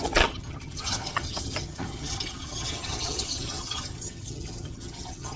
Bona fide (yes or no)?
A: no